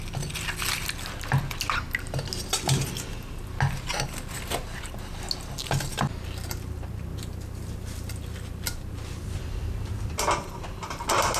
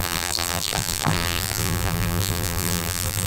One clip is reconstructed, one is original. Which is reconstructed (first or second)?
second